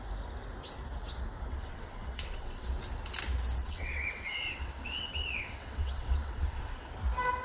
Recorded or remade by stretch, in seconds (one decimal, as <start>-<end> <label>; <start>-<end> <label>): 0.0-1.5 recorded; 1.5-2.7 remade; 2.7-3.6 recorded; 3.6-6.9 remade; 6.9-7.4 recorded